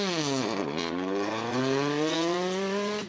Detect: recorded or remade remade